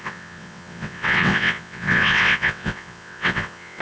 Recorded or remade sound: remade